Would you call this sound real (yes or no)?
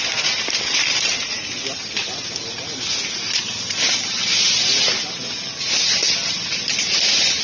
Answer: yes